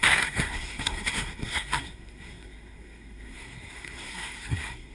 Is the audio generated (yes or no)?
yes